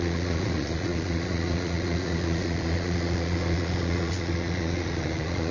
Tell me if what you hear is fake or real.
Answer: fake